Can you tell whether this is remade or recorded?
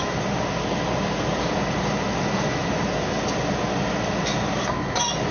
recorded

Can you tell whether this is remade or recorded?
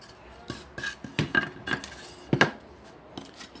recorded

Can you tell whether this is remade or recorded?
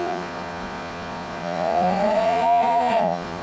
remade